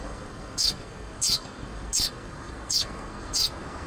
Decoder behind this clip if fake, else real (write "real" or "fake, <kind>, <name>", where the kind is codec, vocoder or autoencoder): fake, codec, SNAC